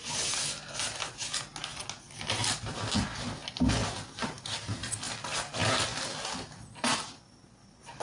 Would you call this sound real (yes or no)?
yes